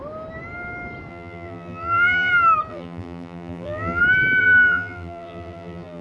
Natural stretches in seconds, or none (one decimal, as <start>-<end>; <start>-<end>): 0.0-1.1; 2.3-2.7; 4.0-4.4